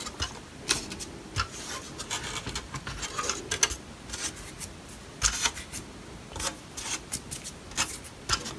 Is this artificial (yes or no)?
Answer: no